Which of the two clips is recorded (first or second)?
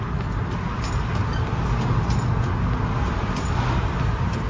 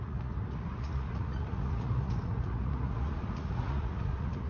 first